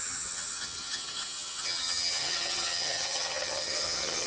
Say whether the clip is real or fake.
fake